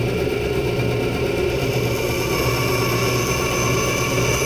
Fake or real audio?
real